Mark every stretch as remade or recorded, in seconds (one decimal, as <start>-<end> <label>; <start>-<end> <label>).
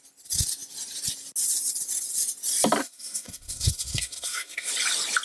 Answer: 0.0-2.8 recorded; 2.8-4.7 remade; 4.7-5.2 recorded